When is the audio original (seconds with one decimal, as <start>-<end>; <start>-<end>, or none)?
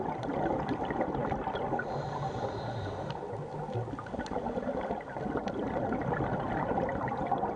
0.0-7.6